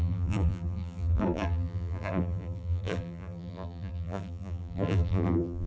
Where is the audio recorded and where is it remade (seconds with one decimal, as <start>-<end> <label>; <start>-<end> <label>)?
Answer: 0.0-5.7 remade